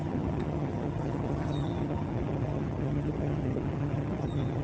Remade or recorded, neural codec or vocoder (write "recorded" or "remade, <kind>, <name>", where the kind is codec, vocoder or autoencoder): remade, vocoder, HiFi-GAN